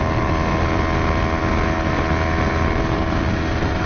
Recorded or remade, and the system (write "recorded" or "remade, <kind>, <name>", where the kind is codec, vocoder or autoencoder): recorded